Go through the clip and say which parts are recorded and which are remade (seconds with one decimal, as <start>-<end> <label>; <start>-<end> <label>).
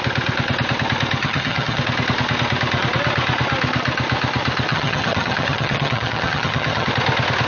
0.0-1.2 recorded; 1.2-1.8 remade; 1.8-4.7 recorded; 4.7-6.9 remade; 6.9-7.5 recorded